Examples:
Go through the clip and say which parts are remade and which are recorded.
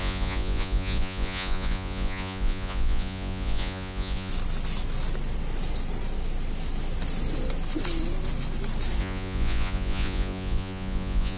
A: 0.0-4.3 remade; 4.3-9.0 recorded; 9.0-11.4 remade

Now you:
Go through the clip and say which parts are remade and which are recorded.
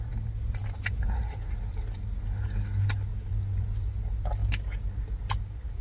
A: 0.0-0.6 recorded; 0.6-1.1 remade; 1.1-3.1 recorded; 3.1-3.9 remade; 3.9-4.4 recorded; 4.4-4.9 remade; 4.9-5.8 recorded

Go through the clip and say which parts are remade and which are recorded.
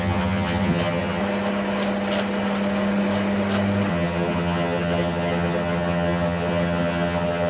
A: 0.0-1.2 remade; 1.2-3.9 recorded; 3.9-7.5 remade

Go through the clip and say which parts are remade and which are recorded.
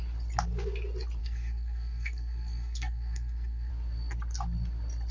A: 0.0-1.2 recorded; 1.2-3.7 remade; 3.7-5.1 recorded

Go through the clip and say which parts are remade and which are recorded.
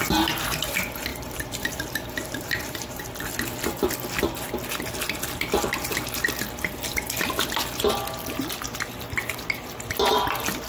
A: 0.0-1.1 recorded; 1.1-3.0 remade; 3.0-10.7 recorded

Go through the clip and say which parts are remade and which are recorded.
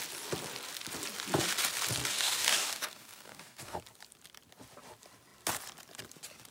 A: 0.0-2.1 recorded; 2.1-3.8 remade; 3.8-6.5 recorded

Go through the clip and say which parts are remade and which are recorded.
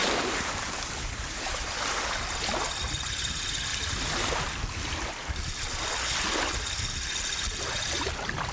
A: 0.0-2.0 remade; 2.0-8.5 recorded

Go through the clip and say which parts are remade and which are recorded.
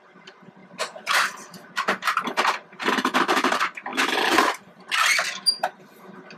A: 0.0-3.9 remade; 3.9-6.4 recorded